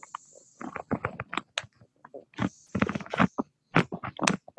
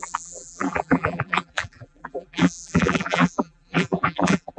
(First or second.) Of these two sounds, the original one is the first